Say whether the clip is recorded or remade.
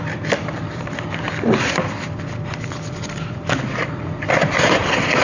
remade